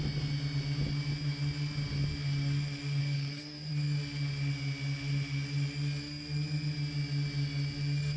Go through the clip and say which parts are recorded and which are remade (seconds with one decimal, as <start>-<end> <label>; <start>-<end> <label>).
0.0-3.0 recorded; 3.0-3.7 remade; 3.7-8.2 recorded